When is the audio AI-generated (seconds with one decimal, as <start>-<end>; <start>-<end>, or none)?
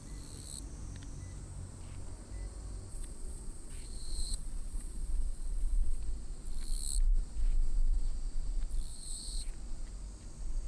2.9-6.0; 8.9-9.5